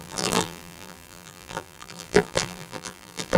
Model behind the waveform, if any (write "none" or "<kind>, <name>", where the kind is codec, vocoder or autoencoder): vocoder, BigVGAN v2